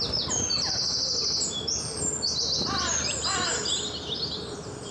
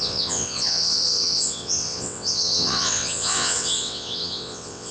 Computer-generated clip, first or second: second